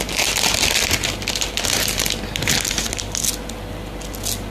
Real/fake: real